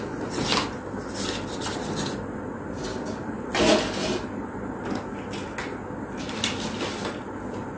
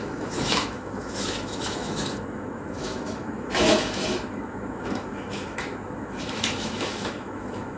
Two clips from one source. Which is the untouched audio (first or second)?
first